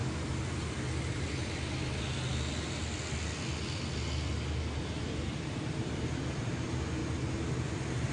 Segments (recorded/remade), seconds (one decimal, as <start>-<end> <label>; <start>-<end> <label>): 0.0-4.8 recorded; 4.8-7.0 remade; 7.0-8.1 recorded